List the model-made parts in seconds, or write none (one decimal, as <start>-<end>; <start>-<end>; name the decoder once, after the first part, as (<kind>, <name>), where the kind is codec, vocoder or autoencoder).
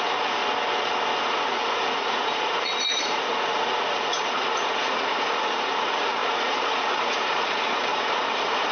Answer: 0.0-0.4 (vocoder, Vocos); 1.2-8.7